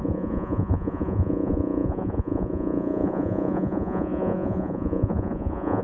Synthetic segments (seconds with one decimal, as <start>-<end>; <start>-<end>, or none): 0.0-5.8